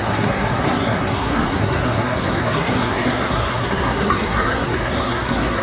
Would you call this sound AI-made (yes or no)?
yes